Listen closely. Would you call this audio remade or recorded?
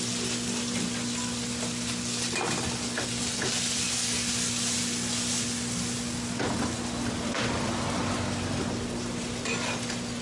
recorded